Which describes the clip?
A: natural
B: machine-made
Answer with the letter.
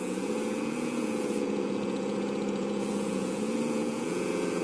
B